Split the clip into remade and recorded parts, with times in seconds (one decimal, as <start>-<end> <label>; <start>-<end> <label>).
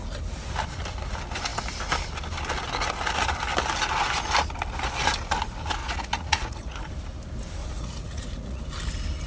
0.0-5.8 recorded; 5.8-6.8 remade; 6.8-7.6 recorded; 7.6-8.6 remade; 8.6-9.3 recorded